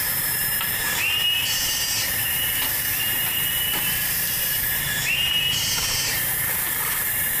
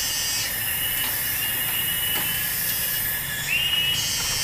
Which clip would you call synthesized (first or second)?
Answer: first